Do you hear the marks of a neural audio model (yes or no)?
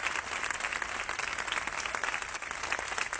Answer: no